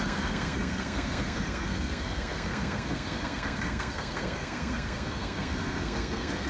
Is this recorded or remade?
remade